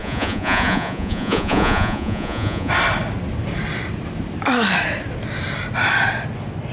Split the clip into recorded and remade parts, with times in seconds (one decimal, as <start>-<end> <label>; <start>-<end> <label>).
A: 0.0-2.7 remade; 2.7-6.7 recorded